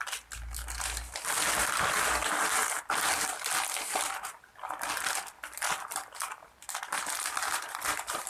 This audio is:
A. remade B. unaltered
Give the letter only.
B